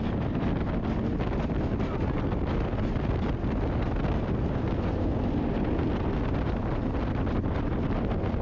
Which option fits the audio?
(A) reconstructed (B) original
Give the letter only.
B